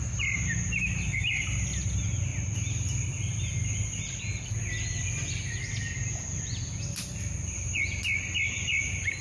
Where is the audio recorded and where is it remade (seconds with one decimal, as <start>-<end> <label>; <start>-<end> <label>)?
0.0-9.2 recorded